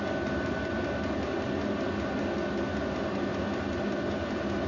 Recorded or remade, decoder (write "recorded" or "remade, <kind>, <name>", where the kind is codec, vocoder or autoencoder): recorded